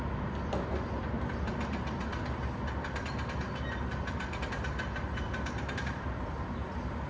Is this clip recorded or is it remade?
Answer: recorded